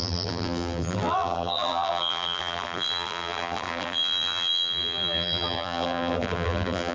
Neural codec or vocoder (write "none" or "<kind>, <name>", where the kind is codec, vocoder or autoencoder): vocoder, BigVGAN v2